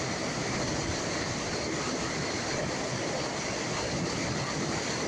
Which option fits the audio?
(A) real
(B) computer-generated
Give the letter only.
A